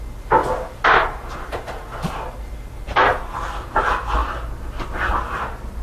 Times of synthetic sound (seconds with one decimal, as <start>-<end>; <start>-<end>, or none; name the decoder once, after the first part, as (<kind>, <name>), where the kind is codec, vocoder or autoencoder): none